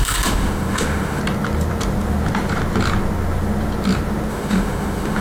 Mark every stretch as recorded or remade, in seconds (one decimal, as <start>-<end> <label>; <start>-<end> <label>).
0.0-1.2 remade; 1.2-4.3 recorded; 4.3-5.2 remade